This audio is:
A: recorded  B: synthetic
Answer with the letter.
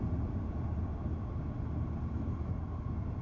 A